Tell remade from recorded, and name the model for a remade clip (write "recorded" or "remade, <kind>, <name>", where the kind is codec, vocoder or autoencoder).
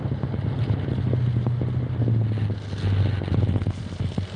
recorded